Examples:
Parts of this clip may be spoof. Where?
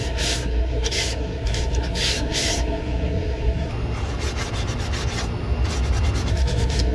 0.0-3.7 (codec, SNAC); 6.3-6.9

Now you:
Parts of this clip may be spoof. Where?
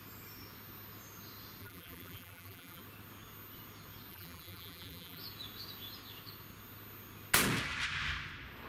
1.6-2.8 (vocoder, BigVGAN v2); 4.1-5.2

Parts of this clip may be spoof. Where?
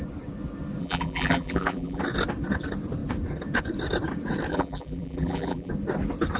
0.8-2.0 (vocoder, BigVGAN v2); 4.5-5.7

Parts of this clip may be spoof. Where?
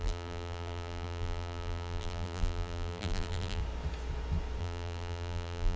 0.0-3.6 (vocoder, BigVGAN v2); 4.6-5.8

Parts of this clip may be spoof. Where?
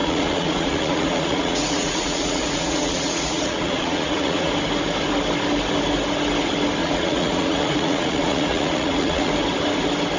0.0-4.5 (vocoder, Vocos); 6.8-9.3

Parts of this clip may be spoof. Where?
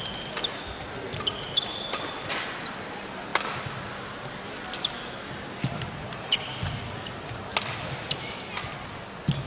none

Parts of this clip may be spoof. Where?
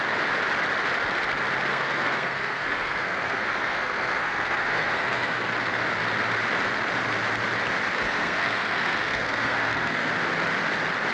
1.7-5.5 (codec, SNAC); 7.9-10.1